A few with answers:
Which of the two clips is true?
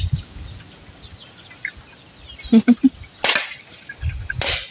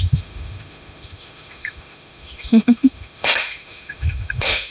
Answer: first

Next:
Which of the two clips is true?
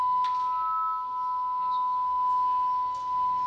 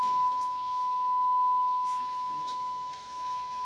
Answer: first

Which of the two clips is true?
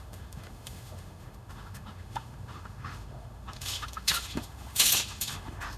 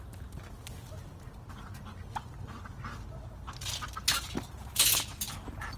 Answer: second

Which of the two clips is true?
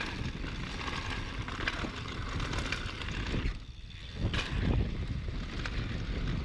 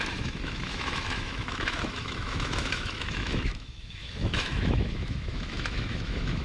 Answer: first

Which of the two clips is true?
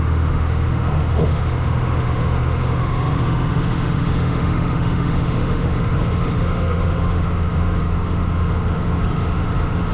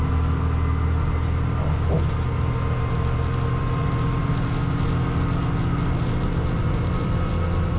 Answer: second